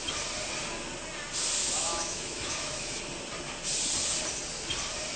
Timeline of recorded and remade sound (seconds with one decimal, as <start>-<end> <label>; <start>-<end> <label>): 0.0-1.6 recorded; 1.6-3.0 remade; 3.0-5.2 recorded